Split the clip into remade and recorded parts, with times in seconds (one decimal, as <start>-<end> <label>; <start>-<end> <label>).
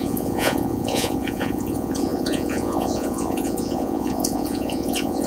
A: 0.0-5.3 remade